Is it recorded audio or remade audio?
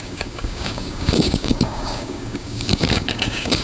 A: remade